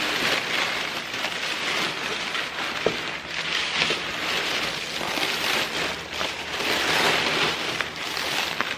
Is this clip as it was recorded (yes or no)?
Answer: yes